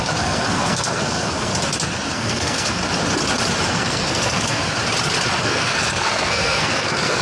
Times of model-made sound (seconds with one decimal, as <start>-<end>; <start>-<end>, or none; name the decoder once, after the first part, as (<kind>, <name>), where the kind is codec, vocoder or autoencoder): 0.0-1.5 (codec, SNAC); 2.1-2.8; 3.7-4.6; 5.4-7.2